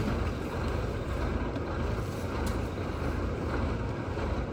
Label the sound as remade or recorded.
recorded